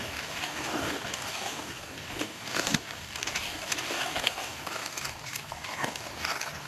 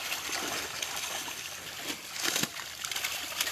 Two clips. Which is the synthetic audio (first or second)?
first